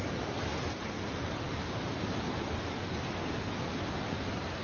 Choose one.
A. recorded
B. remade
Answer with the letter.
A